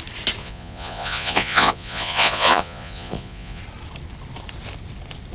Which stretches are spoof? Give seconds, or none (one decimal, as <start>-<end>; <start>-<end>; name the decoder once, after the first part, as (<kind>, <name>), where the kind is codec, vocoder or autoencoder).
0.4-3.6 (vocoder, Vocos)